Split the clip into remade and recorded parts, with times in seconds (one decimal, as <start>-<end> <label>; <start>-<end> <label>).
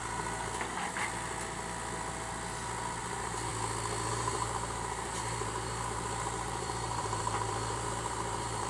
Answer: 0.0-3.0 recorded; 3.0-3.5 remade; 3.5-4.1 recorded; 4.1-8.7 remade